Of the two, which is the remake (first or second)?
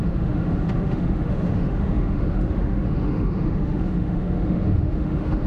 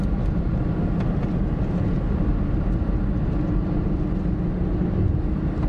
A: first